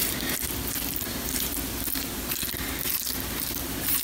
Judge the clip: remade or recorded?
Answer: remade